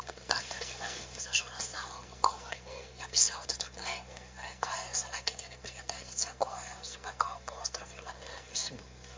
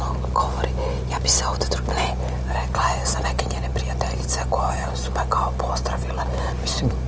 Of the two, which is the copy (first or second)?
first